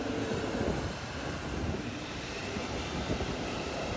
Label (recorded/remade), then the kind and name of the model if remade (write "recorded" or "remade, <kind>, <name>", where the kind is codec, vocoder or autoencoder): recorded